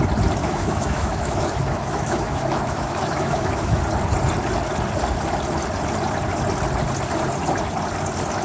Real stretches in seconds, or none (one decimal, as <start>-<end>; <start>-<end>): 0.0-0.4; 3.8-8.4